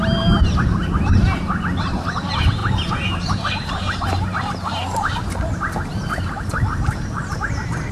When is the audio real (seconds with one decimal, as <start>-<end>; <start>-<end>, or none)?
none